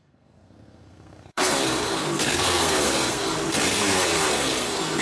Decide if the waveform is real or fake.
fake